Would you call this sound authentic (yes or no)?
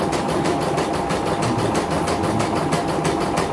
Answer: yes